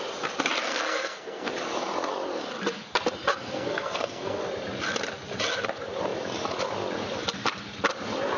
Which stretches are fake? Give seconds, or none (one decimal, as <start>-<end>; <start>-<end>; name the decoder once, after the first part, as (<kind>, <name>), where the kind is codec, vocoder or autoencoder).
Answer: 0.6-1.5 (codec, SNAC); 3.3-4.4

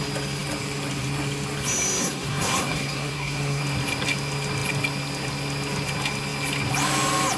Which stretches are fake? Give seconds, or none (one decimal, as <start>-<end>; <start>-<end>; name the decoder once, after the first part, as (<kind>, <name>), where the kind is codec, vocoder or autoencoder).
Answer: 2.0-3.6 (codec, SNAC)

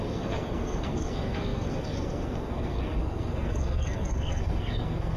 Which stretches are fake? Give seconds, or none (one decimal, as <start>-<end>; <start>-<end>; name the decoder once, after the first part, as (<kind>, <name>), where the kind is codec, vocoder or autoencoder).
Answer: 0.0-5.2 (codec, SNAC)

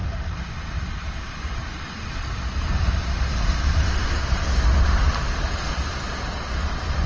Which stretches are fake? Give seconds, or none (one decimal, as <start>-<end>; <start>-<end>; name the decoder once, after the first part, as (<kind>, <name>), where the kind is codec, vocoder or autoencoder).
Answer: none

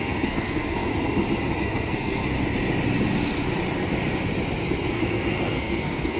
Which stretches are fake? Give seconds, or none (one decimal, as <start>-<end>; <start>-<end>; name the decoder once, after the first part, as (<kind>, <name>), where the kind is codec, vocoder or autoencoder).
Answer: 0.0-0.9 (codec, SNAC); 1.6-2.2; 4.9-6.2

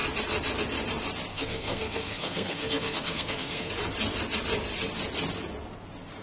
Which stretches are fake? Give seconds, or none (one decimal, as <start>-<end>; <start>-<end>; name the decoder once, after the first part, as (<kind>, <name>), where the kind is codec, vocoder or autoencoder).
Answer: 1.3-3.7 (codec, SNAC)